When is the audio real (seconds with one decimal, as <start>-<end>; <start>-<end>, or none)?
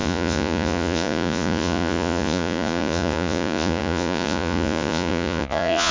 none